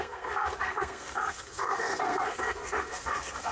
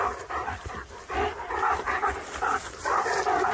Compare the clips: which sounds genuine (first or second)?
second